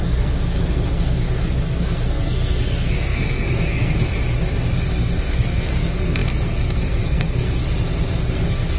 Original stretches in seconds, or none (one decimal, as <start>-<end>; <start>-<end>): 4.1-4.9; 7.6-8.1